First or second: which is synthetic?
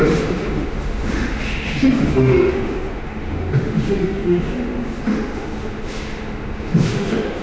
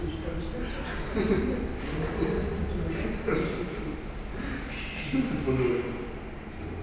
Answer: first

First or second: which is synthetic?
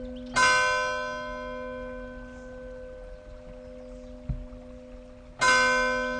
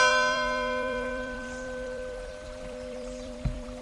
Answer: second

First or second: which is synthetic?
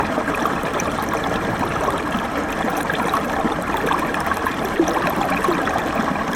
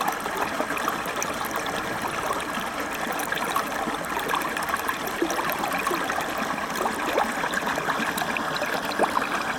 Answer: first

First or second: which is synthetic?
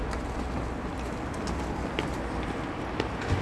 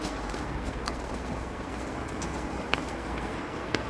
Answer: second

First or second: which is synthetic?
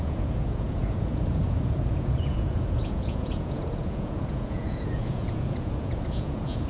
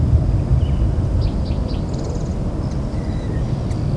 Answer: first